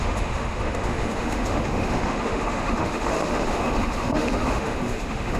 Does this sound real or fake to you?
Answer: fake